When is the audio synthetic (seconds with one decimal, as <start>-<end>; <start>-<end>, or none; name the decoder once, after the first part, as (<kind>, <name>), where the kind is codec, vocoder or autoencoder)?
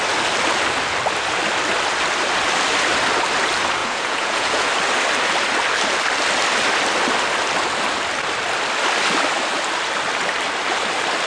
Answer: 3.8-4.7 (vocoder, Vocos)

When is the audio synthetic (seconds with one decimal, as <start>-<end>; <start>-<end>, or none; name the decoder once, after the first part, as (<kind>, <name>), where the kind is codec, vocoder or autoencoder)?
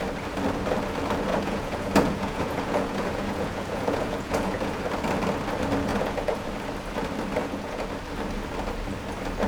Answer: 1.3-4.7 (vocoder, Vocos); 5.9-6.5; 7.4-7.9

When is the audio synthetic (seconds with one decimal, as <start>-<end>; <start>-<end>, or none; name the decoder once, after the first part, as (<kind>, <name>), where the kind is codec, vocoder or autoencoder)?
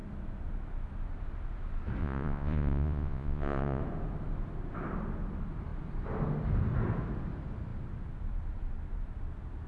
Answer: 2.0-3.8 (vocoder, Vocos)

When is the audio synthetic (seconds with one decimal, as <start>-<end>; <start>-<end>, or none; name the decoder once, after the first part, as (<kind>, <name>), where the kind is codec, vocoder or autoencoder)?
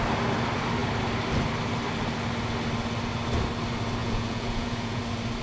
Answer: 4.0-5.0 (vocoder, Vocos)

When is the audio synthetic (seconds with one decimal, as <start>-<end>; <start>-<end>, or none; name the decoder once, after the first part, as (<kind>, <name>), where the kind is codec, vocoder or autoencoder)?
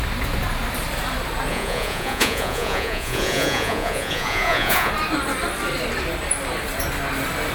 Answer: 1.5-4.9 (vocoder, Vocos)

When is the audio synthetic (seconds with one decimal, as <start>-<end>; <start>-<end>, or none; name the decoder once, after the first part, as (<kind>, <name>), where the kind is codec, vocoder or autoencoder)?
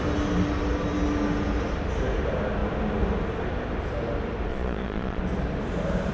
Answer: 4.5-5.2 (vocoder, Vocos)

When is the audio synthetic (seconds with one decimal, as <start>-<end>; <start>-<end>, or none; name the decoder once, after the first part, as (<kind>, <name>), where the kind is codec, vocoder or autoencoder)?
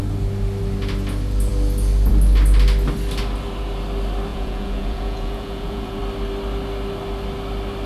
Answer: 4.3-6.0 (vocoder, Vocos)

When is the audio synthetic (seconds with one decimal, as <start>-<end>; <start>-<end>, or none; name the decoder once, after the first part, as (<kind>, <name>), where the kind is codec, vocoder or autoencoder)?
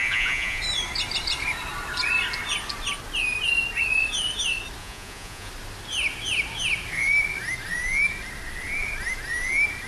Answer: 0.0-0.6 (vocoder, Vocos); 4.8-5.5